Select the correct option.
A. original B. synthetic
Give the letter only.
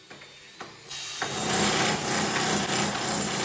A